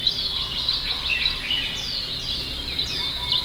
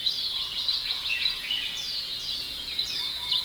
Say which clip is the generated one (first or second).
second